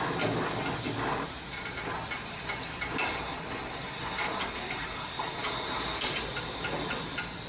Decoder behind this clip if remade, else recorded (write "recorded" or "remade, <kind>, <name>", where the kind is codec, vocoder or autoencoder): recorded